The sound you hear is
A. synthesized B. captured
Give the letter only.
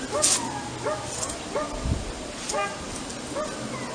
B